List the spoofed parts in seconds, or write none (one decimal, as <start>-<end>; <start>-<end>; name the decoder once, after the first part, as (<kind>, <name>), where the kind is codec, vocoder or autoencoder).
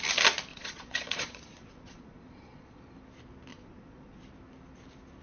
0.5-2.8 (vocoder, Vocos); 3.5-4.2